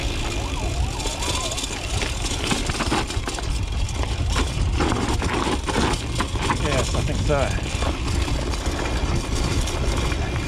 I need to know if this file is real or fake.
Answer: real